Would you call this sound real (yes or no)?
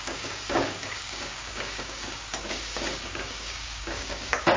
no